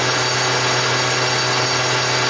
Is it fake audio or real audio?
real